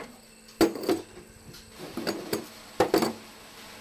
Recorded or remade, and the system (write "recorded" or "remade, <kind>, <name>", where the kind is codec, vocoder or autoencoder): recorded